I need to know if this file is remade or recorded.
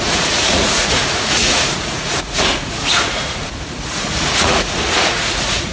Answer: remade